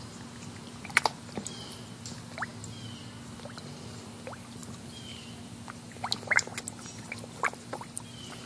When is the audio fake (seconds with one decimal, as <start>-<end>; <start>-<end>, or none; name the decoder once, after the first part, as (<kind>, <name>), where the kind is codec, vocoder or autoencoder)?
none